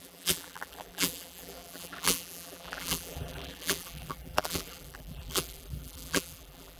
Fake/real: fake